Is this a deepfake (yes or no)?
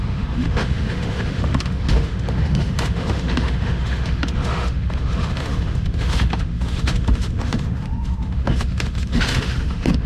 yes